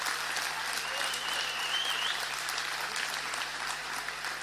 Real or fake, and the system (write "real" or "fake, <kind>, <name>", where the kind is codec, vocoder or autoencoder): real